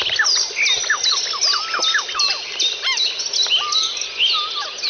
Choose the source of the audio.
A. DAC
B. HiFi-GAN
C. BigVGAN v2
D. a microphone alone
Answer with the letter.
D